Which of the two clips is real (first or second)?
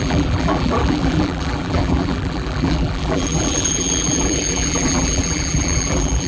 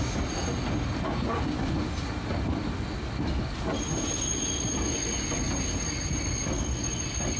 second